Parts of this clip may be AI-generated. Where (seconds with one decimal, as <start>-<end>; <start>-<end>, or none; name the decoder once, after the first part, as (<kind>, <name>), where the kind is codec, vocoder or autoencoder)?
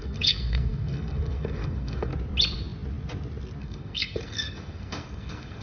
0.0-2.1 (codec, SNAC); 3.6-5.6